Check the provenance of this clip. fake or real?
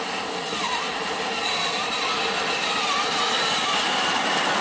real